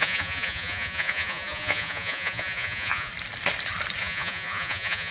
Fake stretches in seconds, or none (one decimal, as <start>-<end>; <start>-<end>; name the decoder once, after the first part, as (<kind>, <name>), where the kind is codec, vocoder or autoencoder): 0.0-3.1 (vocoder, Vocos); 4.0-5.1